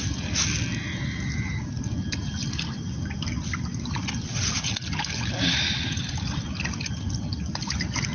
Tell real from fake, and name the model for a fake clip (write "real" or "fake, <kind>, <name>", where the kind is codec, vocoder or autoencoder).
real